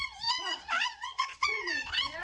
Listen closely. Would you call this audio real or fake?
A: fake